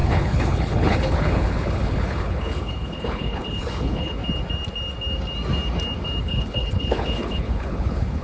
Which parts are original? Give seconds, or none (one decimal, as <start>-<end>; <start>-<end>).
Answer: 4.2-6.2